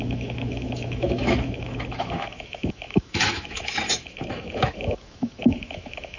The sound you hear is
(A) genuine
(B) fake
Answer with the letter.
B